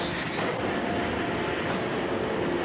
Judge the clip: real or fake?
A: real